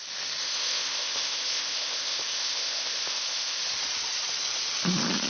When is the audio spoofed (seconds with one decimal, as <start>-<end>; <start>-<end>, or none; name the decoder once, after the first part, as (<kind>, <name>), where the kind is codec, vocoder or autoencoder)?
0.4-3.6 (codec, ZipCodec)

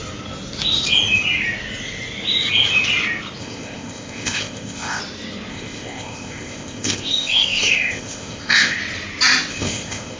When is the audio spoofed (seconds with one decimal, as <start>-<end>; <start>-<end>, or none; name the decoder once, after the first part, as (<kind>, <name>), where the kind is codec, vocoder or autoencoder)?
3.4-5.0 (codec, ZipCodec); 5.5-8.8; 9.5-10.2

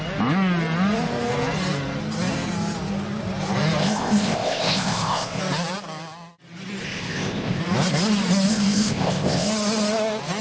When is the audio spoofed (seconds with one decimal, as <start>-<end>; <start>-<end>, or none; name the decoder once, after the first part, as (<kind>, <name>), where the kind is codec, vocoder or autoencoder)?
3.8-5.4 (codec, ZipCodec); 6.8-7.6; 8.5-9.5

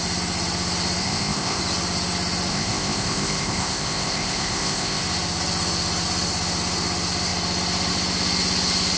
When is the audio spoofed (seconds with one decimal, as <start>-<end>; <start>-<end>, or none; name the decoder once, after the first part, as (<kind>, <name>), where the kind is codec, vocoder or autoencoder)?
1.0-1.6 (codec, ZipCodec); 2.5-5.0

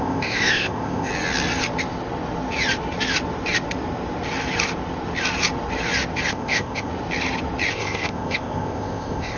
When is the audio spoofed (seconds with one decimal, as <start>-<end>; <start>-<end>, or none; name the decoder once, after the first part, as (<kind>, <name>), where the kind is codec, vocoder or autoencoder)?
0.0-1.1 (codec, ZipCodec); 6.3-6.9; 7.7-9.4

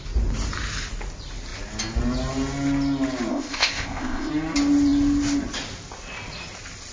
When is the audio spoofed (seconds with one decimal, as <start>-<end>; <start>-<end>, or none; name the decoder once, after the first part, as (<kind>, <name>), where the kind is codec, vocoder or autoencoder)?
3.3-4.3 (codec, ZipCodec)

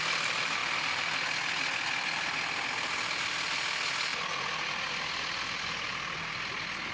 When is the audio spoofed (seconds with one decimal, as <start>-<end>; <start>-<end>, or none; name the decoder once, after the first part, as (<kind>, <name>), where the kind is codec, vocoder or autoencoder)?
none